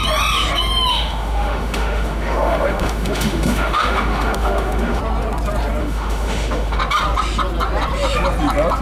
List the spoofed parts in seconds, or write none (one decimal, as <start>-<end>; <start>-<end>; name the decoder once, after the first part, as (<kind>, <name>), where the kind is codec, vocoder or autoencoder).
0.9-5.0 (autoencoder, DAC-VAE); 5.8-6.8